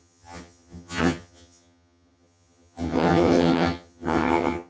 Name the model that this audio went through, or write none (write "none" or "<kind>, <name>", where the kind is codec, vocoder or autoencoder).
vocoder, HiFi-GAN